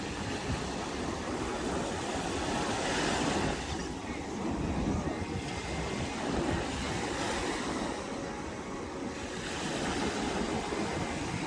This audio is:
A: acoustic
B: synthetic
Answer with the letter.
A